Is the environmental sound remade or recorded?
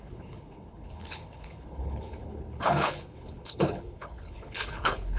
remade